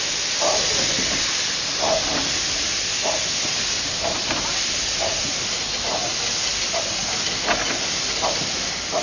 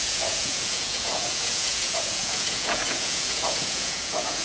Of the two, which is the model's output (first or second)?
second